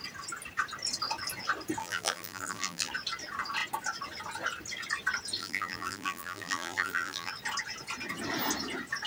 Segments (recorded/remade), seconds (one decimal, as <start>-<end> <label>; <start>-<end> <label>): 0.0-1.8 recorded; 1.8-2.9 remade; 2.9-5.4 recorded; 5.4-7.3 remade; 7.3-9.1 recorded

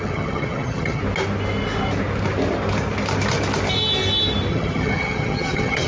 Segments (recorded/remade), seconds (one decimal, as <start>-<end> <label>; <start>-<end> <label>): 0.0-1.0 remade; 1.0-4.5 recorded; 4.5-5.9 remade

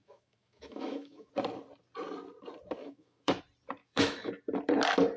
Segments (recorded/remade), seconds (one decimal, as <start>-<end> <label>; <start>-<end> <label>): 0.0-1.3 remade; 1.3-2.8 recorded; 2.8-3.4 remade; 3.4-3.8 recorded; 3.8-4.3 remade; 4.3-5.2 recorded

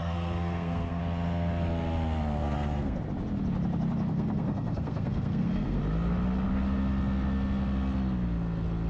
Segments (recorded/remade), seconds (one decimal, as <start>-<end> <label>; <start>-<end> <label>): 0.0-1.0 remade; 1.0-2.4 recorded; 2.4-3.0 remade; 3.0-4.1 recorded; 4.1-5.8 remade; 5.8-8.9 recorded

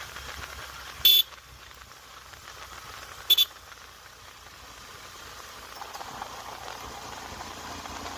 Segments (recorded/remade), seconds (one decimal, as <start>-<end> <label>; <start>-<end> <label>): 0.0-8.2 recorded

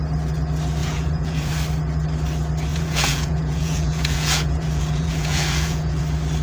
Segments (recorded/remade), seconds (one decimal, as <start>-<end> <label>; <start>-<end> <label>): 0.0-0.8 recorded; 0.8-1.5 remade; 1.5-2.7 recorded; 2.7-6.0 remade; 6.0-6.4 recorded

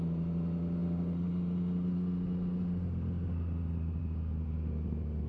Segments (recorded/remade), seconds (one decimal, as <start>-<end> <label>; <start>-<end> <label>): 0.0-5.3 recorded

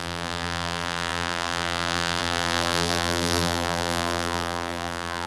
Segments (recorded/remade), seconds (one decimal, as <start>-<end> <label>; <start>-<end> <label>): 0.0-5.3 remade